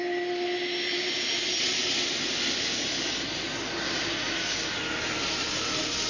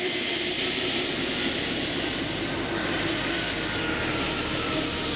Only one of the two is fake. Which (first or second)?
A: second